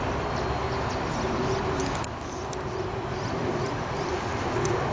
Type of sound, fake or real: real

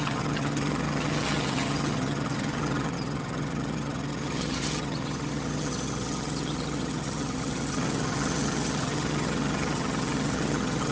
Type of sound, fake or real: fake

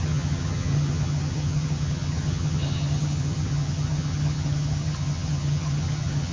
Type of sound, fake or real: fake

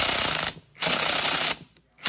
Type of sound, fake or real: real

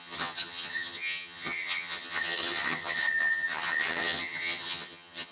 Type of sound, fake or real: fake